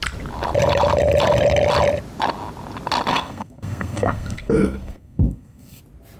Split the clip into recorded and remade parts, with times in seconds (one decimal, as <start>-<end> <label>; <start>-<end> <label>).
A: 0.0-3.1 recorded; 3.1-5.8 remade; 5.8-6.2 recorded